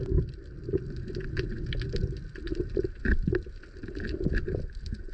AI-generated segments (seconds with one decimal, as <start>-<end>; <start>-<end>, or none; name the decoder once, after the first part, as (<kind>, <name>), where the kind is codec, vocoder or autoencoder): none